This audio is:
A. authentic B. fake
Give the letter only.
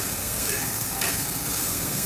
B